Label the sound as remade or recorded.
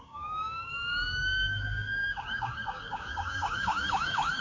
remade